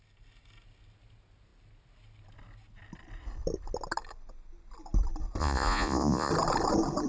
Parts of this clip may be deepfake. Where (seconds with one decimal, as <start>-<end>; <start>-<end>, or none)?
5.4-6.3